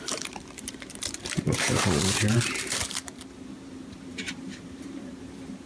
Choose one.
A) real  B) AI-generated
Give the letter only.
B